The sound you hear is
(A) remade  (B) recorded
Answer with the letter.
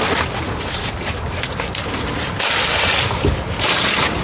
B